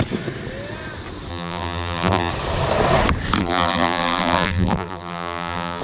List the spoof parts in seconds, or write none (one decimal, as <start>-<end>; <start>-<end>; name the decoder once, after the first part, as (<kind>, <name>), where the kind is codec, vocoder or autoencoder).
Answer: 1.3-2.3 (vocoder, BigVGAN v2); 3.4-5.8